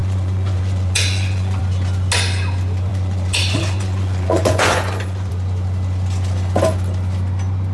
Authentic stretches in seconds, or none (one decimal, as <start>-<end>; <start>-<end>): 1.6-2.9; 5.3-7.7